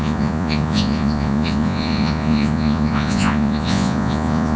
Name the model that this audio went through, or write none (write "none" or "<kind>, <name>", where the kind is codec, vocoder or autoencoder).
vocoder, Vocos